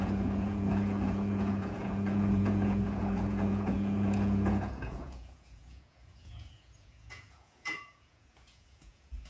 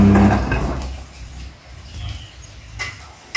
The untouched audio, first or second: second